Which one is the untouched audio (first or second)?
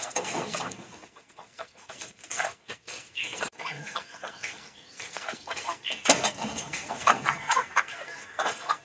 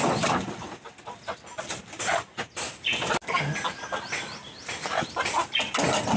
second